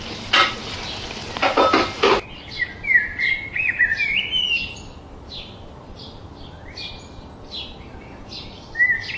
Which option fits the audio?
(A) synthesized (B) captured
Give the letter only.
B